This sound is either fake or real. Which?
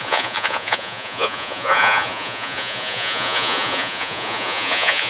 fake